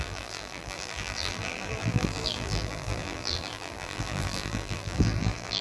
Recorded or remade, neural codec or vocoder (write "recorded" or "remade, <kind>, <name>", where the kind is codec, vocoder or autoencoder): remade, vocoder, BigVGAN v2